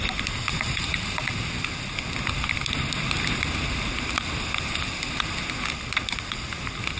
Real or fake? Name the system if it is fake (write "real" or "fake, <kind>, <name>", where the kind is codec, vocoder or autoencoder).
real